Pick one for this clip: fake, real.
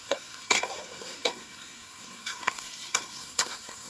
fake